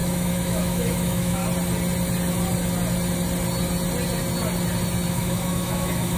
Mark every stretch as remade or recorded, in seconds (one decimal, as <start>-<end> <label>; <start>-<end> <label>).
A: 0.0-1.4 remade; 1.4-5.1 recorded; 5.1-6.2 remade